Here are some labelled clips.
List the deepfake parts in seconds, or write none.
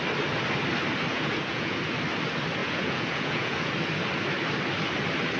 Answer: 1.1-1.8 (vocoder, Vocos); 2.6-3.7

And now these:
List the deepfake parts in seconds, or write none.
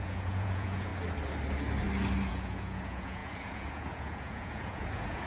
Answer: 0.0-0.9 (vocoder, Vocos); 2.3-5.3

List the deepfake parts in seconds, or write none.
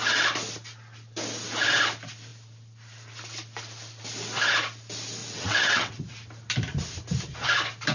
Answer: 5.2-6.0 (vocoder, WaveNeXt)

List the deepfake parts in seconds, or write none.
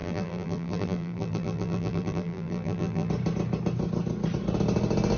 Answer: 0.0-3.1 (vocoder, BigVGAN v2)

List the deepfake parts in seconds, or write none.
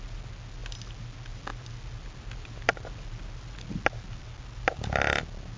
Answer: none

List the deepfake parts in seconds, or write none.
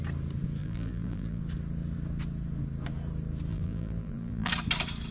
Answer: 0.6-1.4 (vocoder, BigVGAN v2); 3.5-4.5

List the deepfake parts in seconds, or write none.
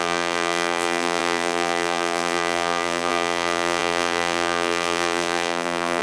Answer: 0.0-6.0 (vocoder, BigVGAN v2)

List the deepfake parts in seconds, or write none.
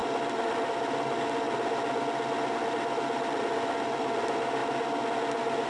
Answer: none